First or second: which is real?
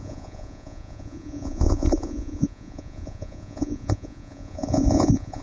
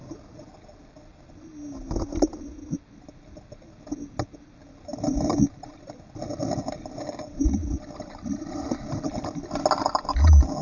second